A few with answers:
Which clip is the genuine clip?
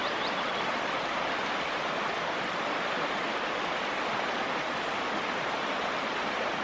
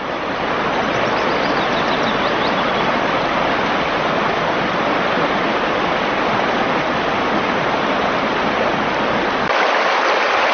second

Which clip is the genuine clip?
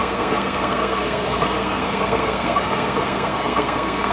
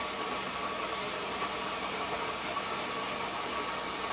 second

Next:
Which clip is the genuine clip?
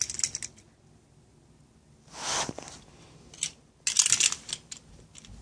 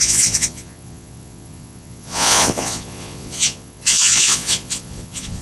first